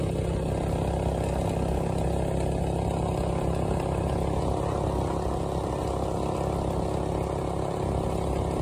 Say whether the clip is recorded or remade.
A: recorded